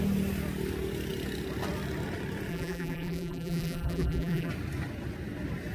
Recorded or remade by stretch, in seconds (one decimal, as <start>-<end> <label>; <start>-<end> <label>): 0.0-2.5 recorded; 2.5-4.5 remade; 4.5-5.7 recorded